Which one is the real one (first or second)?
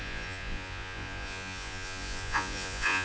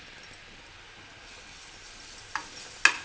second